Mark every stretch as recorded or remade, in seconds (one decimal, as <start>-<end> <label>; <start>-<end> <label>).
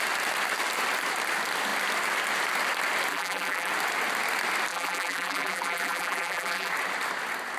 0.0-3.1 recorded; 3.1-3.7 remade; 3.7-4.7 recorded; 4.7-6.7 remade; 6.7-7.6 recorded